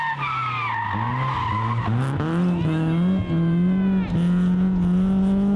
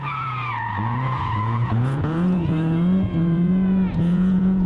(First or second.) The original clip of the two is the first